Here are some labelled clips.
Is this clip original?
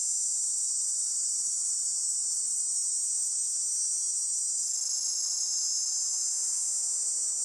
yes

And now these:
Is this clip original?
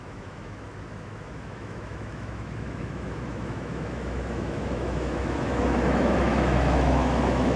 no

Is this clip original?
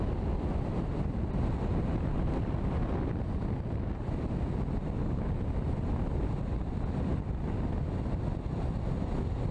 yes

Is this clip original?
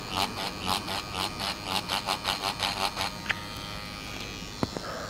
yes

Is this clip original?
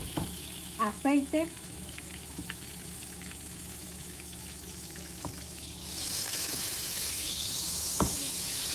no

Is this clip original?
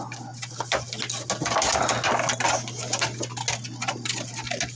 yes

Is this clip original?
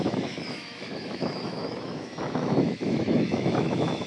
no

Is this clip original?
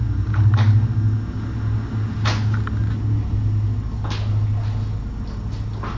yes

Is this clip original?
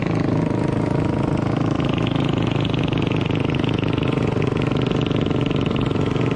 yes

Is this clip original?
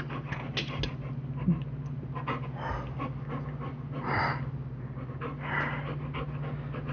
yes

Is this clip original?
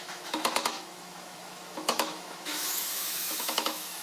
no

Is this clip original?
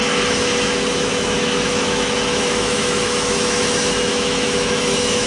no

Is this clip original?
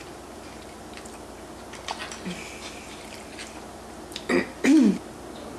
yes